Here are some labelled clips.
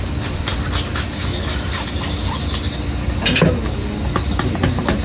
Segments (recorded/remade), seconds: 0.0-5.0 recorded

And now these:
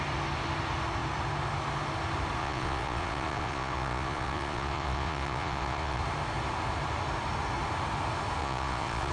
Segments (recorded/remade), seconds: 0.0-2.4 recorded; 2.4-6.0 remade; 6.0-8.4 recorded; 8.4-9.1 remade

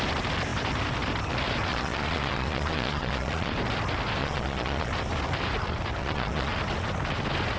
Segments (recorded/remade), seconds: 0.0-1.7 recorded; 1.7-3.5 remade; 3.5-4.2 recorded; 4.2-4.9 remade; 4.9-6.0 recorded; 6.0-6.5 remade; 6.5-7.6 recorded

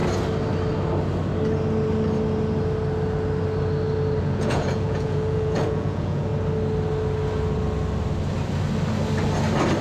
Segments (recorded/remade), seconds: 0.0-4.2 recorded; 4.2-6.3 remade; 6.3-9.8 recorded

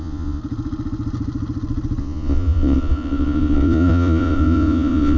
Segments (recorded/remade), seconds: 0.0-0.4 remade; 0.4-2.0 recorded; 2.0-5.2 remade

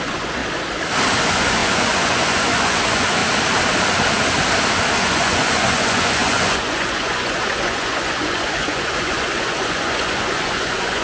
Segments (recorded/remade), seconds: 0.0-0.4 remade; 0.4-1.2 recorded; 1.2-3.2 remade; 3.2-5.0 recorded; 5.0-11.0 remade